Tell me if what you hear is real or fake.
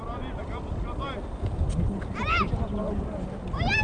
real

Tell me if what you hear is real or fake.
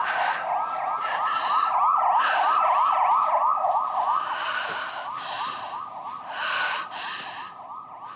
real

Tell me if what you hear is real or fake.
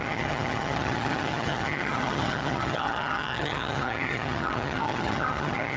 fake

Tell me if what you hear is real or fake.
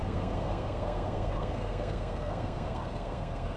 fake